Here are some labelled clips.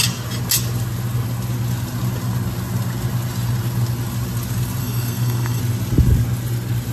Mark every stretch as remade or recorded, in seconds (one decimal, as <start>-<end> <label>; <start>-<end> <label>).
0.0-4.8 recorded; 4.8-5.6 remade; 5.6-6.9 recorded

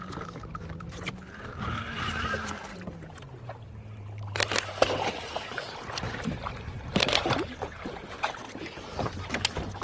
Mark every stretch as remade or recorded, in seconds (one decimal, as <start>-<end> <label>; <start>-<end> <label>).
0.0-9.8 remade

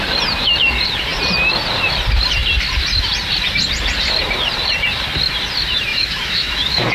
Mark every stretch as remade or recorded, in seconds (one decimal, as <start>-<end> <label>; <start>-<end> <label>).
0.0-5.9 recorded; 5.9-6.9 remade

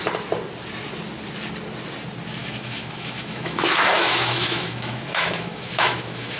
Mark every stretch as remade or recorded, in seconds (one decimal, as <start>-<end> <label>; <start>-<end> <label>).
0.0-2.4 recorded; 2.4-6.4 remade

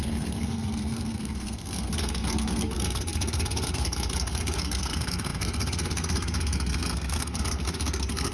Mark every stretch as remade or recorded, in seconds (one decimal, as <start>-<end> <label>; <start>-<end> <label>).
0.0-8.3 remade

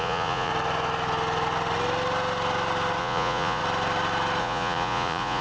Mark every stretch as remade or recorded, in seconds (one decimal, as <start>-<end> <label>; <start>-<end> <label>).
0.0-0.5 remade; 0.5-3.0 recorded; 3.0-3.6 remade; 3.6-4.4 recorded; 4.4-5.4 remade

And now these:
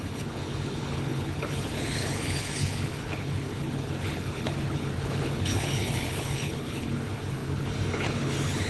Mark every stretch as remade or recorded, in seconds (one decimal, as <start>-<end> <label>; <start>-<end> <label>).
0.0-8.7 remade

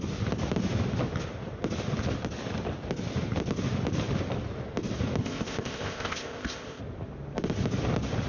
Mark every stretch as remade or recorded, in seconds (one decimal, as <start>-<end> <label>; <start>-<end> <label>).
0.0-5.2 recorded; 5.2-6.8 remade; 6.8-8.3 recorded